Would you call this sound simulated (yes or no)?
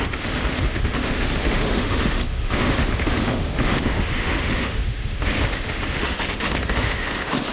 yes